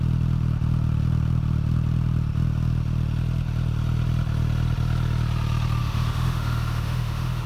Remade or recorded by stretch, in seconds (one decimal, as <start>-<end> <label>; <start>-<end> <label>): 0.0-5.8 recorded; 5.8-7.5 remade

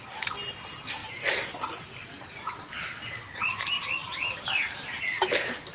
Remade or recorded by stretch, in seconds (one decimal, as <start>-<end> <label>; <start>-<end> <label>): 0.0-5.7 recorded

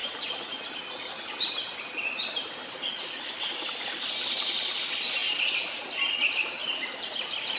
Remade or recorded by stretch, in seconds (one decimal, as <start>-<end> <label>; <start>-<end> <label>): 0.0-7.6 recorded